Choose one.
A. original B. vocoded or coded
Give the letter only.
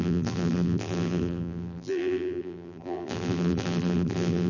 B